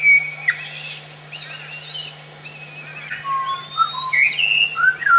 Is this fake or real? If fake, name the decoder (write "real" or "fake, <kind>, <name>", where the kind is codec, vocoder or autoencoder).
real